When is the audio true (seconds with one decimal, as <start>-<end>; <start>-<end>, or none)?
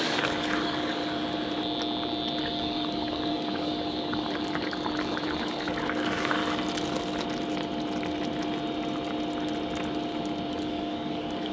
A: 1.0-2.4; 6.4-10.5